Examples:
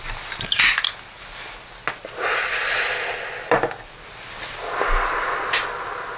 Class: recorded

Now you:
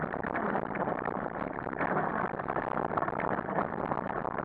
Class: recorded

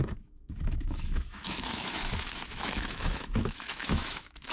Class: remade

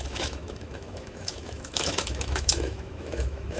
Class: remade